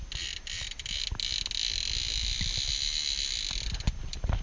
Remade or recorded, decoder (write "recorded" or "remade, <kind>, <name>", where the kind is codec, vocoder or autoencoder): recorded